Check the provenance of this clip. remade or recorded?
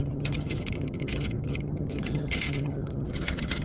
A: remade